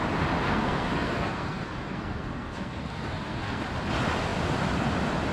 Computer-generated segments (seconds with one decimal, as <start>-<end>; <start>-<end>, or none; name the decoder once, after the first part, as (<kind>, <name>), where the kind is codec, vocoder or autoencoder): 0.4-3.6 (codec, SNAC)